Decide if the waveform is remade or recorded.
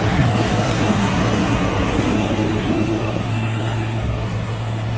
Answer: remade